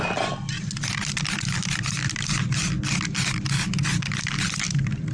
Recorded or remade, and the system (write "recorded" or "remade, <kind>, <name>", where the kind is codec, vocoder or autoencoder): recorded